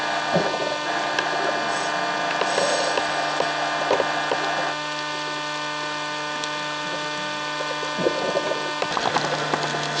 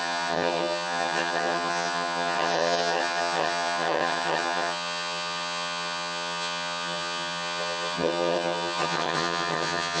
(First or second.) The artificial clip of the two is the second